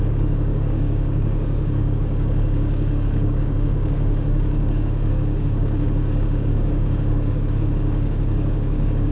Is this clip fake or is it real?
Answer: fake